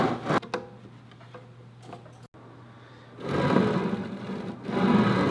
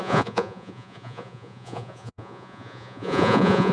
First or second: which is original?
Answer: first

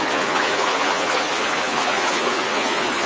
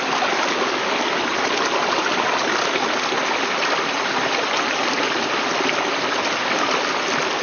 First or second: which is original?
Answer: second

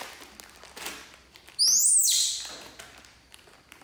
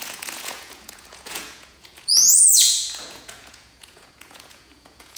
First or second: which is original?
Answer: first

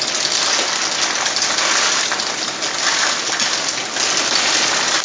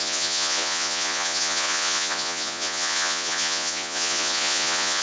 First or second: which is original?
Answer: first